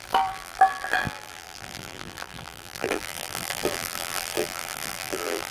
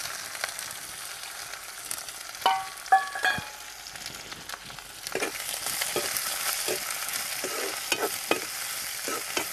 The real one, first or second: second